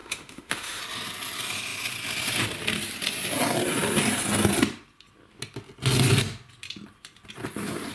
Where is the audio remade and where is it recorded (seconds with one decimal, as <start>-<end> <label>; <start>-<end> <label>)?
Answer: 0.0-0.8 remade; 0.8-7.9 recorded